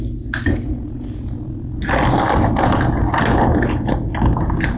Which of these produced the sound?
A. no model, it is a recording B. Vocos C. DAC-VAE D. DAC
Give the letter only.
A